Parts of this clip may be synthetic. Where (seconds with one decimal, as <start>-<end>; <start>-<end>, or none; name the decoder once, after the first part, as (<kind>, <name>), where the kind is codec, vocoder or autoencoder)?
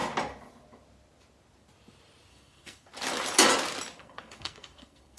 2.3-2.9 (codec, SNAC); 4.0-5.2